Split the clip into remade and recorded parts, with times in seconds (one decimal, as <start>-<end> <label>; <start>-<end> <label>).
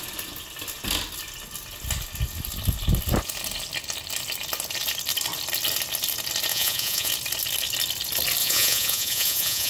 0.0-6.5 recorded; 6.5-7.1 remade; 7.1-8.4 recorded; 8.4-9.7 remade